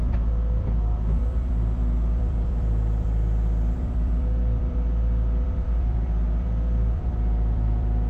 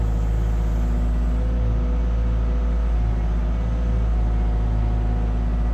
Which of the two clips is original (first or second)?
second